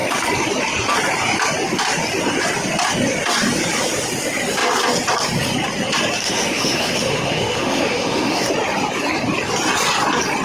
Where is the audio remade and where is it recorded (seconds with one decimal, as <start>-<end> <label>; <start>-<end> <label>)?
0.0-6.2 recorded; 6.2-8.5 remade; 8.5-10.4 recorded